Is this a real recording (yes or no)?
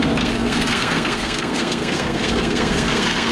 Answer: no